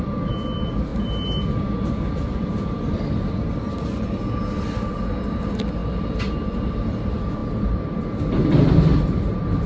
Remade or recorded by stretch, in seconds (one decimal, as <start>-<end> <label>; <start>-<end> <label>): 0.0-9.7 recorded